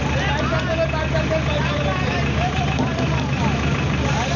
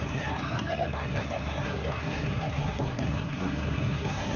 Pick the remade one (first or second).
second